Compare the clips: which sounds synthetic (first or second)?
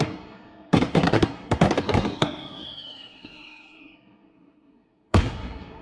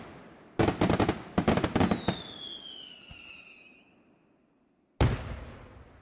first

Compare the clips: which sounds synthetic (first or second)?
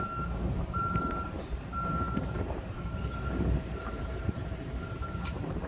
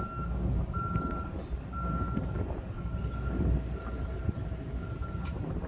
first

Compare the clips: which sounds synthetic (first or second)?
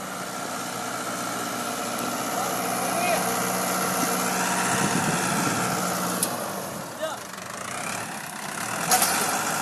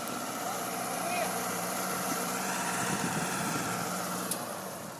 second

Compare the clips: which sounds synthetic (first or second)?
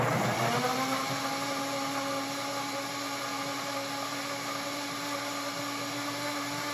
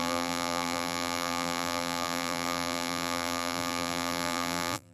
second